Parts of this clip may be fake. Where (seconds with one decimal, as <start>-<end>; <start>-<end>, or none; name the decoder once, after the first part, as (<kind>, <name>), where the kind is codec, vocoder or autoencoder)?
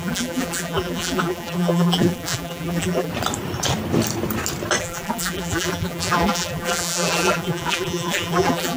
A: 0.0-3.1 (vocoder, BigVGAN v2); 4.8-8.8